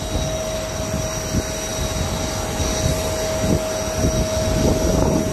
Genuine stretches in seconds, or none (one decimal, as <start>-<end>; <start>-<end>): 0.0-5.3